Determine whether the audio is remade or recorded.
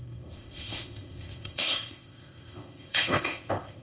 remade